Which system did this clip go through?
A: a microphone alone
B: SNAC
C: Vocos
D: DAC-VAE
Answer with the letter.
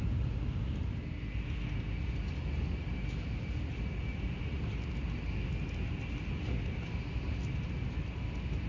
A